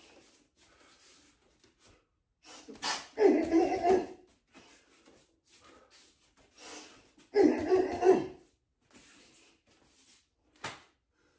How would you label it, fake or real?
real